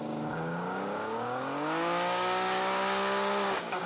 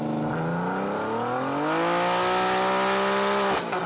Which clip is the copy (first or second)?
first